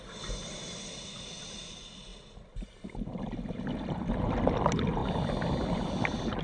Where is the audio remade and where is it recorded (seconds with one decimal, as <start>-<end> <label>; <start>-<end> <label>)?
0.0-6.4 recorded